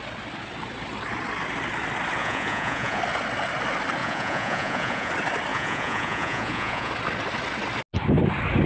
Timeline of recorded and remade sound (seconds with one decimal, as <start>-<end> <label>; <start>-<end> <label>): 0.0-2.2 recorded; 2.2-3.0 remade; 3.0-4.0 recorded; 4.0-5.1 remade; 5.1-5.5 recorded; 5.5-6.9 remade; 6.9-8.7 recorded